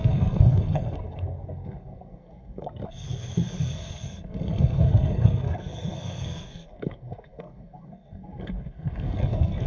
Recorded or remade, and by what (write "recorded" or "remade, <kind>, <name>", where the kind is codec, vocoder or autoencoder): remade, codec, SNAC